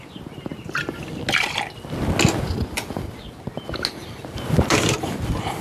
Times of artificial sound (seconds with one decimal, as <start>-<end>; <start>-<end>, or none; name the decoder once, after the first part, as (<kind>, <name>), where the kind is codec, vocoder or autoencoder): 0.0-0.5 (vocoder, BigVGAN v2); 3.9-5.6